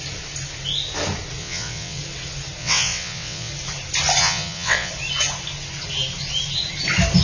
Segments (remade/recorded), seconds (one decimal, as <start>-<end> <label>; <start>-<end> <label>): 0.0-1.4 recorded; 1.4-2.0 remade; 2.0-2.6 recorded; 2.6-3.5 remade; 3.5-4.2 recorded; 4.2-4.9 remade; 4.9-7.2 recorded